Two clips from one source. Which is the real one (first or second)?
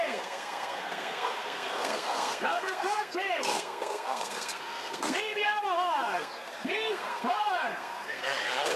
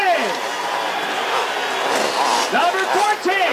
second